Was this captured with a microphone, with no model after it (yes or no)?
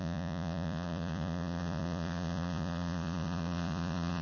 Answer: no